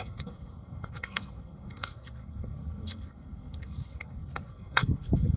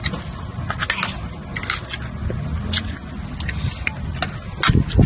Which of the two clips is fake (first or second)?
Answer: first